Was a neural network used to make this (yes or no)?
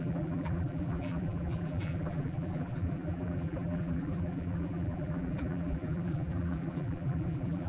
yes